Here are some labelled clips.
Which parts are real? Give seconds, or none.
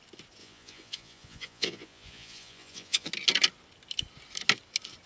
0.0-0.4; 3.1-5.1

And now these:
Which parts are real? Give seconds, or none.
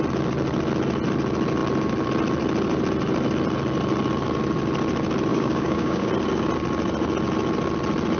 0.0-5.3; 6.1-8.2